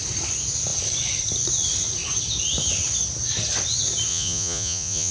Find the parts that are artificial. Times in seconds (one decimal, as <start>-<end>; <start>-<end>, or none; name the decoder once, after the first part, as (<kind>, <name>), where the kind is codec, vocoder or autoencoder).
4.1-5.1 (vocoder, Vocos)